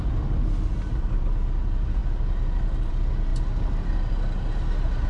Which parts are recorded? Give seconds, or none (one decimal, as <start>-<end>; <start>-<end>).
0.0-5.1